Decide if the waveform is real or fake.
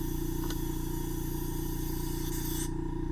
real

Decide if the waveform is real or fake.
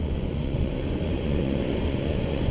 fake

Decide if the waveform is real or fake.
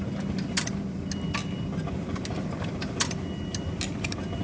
real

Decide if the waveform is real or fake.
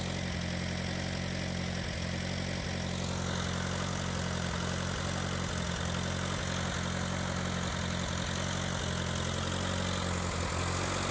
real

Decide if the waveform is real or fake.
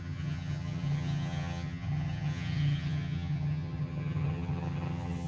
fake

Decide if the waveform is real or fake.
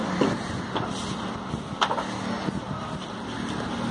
real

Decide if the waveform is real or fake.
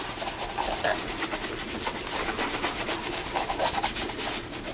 real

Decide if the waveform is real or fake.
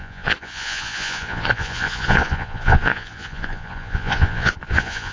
fake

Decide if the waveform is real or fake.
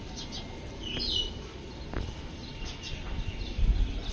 real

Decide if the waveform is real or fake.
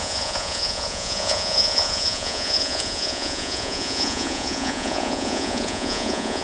fake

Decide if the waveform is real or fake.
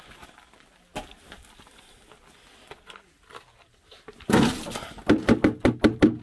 real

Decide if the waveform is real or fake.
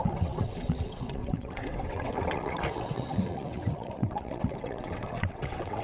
fake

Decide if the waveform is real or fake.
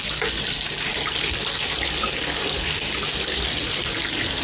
real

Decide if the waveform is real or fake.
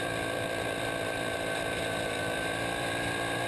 fake